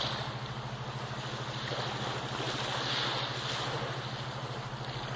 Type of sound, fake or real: real